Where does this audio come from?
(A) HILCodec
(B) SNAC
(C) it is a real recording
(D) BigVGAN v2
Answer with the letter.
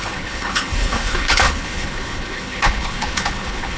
A